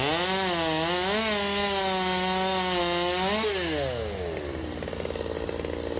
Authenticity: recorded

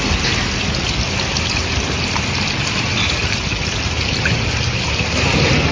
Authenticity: recorded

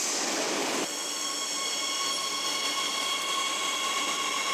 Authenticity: recorded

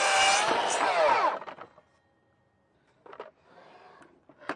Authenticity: recorded